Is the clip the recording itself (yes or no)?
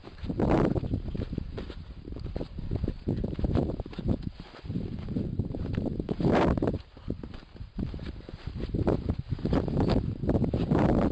no